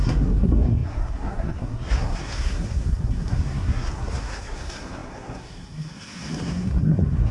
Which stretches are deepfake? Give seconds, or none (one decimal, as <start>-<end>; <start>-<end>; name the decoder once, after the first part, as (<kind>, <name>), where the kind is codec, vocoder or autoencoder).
0.0-7.3 (codec, SNAC)